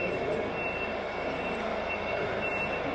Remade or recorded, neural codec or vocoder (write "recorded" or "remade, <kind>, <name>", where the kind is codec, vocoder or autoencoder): recorded